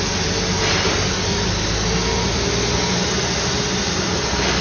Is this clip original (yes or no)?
yes